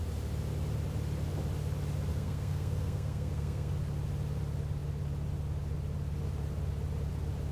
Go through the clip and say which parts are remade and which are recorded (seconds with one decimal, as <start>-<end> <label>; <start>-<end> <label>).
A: 0.0-2.1 recorded; 2.1-3.7 remade; 3.7-7.5 recorded